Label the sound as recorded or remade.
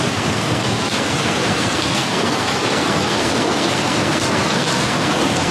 remade